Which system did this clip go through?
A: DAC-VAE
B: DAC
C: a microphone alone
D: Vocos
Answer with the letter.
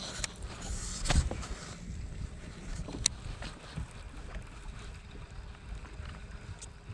C